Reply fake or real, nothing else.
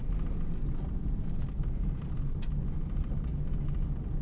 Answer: real